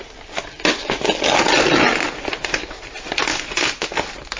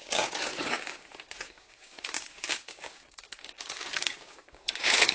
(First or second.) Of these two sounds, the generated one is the second